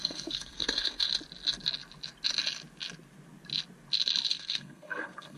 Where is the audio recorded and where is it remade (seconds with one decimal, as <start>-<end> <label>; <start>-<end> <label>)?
0.0-1.1 remade; 1.1-4.3 recorded; 4.3-5.4 remade